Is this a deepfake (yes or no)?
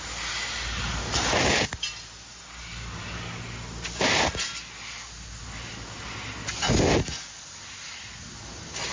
no